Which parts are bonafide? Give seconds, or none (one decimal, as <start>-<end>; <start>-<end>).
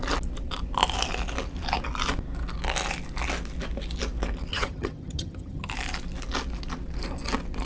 0.0-4.5; 5.7-7.7